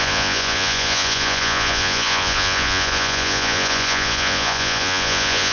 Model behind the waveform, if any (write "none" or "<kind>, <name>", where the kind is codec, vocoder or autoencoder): vocoder, Vocos